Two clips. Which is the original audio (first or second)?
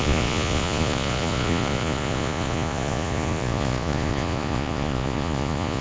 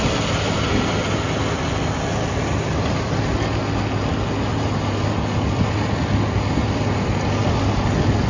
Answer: second